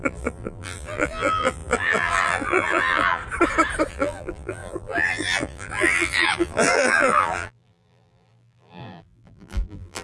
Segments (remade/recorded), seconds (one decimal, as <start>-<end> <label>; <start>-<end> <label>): 0.0-3.2 remade; 3.2-3.9 recorded; 3.9-10.0 remade